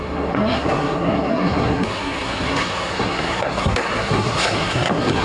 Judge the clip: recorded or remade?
remade